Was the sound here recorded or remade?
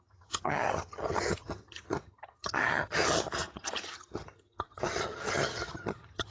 remade